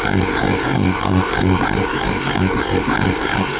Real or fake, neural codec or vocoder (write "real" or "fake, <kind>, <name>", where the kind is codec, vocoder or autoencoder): fake, codec, SNAC